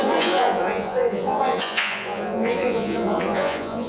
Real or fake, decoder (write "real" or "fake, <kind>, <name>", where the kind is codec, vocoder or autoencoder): fake, vocoder, Vocos